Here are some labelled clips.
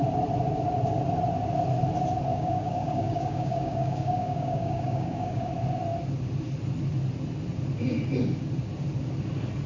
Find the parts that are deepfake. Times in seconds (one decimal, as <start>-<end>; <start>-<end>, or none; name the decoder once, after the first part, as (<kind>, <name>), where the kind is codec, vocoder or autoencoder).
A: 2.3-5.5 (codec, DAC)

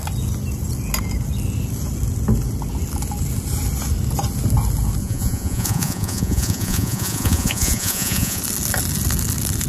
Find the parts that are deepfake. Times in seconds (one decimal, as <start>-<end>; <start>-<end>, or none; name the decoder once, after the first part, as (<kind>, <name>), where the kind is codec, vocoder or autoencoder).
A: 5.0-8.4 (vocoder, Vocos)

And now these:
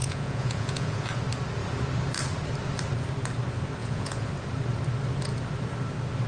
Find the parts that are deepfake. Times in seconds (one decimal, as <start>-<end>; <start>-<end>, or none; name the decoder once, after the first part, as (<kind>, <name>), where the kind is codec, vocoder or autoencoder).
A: 0.0-1.2 (vocoder, Vocos); 3.8-4.3

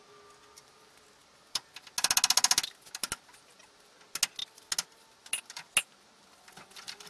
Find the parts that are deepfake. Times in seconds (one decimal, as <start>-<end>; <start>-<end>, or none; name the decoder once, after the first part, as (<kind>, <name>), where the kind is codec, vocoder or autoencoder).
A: none